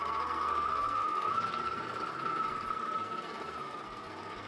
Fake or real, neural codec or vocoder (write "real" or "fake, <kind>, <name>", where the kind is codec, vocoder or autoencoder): fake, codec, SNAC